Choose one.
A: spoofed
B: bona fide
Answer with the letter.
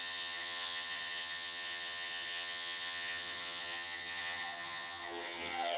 A